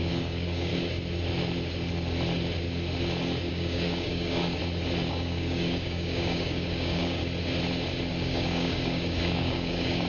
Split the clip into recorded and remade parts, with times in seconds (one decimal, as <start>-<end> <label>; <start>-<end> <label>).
0.0-0.7 remade; 0.7-3.5 recorded; 3.5-4.6 remade; 4.6-5.1 recorded; 5.1-7.2 remade; 7.2-8.1 recorded; 8.1-10.1 remade